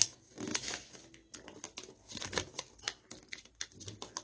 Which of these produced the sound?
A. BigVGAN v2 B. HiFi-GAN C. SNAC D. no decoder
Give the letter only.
D